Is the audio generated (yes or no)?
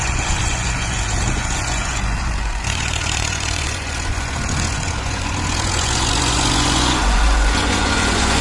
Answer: yes